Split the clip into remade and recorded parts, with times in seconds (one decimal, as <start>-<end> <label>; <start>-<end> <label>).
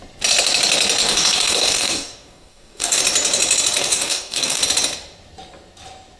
0.0-1.0 recorded; 1.0-3.0 remade; 3.0-3.8 recorded; 3.8-4.6 remade; 4.6-6.2 recorded